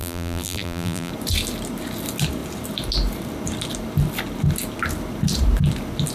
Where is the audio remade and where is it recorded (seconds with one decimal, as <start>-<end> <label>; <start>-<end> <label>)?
0.0-1.1 remade; 1.1-6.1 recorded